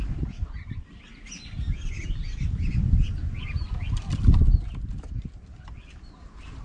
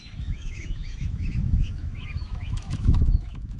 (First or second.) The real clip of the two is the first